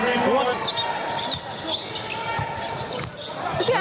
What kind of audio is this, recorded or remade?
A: recorded